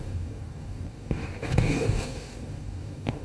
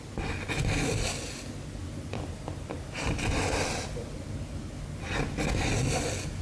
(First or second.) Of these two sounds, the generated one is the first